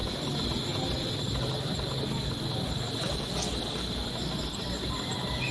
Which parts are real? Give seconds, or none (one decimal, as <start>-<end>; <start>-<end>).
0.0-5.5

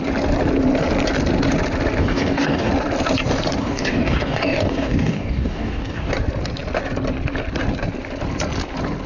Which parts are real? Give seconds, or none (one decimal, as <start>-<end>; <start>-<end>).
0.0-2.0; 2.7-3.6; 6.1-9.1

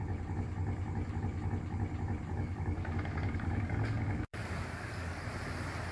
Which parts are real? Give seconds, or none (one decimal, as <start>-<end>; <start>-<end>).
0.0-2.3; 5.3-5.9

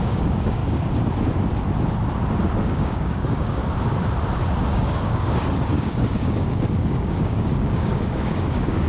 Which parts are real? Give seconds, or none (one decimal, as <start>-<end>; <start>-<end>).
0.6-2.6; 3.6-4.7